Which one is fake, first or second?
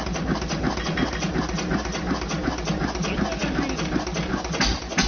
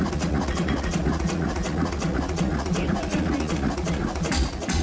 second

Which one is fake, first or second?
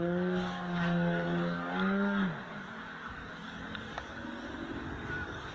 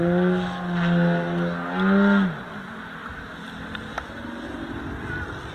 first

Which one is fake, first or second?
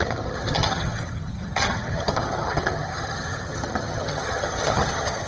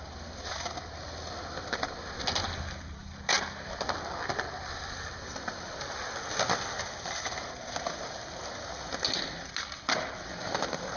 first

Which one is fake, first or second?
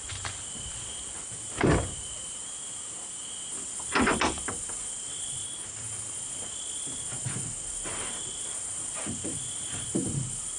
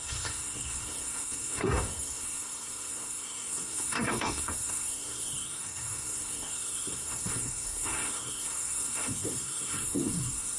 second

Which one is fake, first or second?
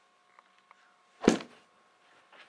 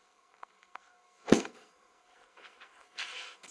second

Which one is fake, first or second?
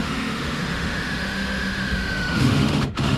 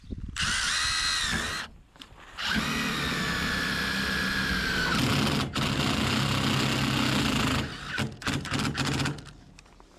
first